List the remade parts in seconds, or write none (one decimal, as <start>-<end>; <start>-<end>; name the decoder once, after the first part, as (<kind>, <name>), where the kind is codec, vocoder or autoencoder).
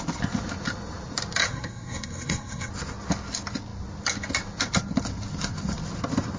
1.5-2.7 (codec, SNAC)